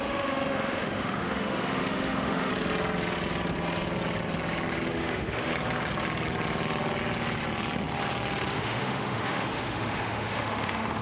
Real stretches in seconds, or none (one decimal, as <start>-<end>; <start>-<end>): 2.5-4.9; 5.5-8.5

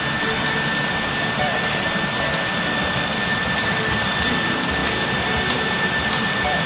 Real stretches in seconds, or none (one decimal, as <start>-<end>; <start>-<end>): 0.0-6.7

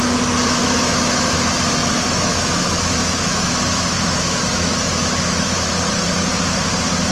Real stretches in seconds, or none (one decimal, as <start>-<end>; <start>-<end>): 0.0-0.6; 1.3-1.8; 5.7-7.1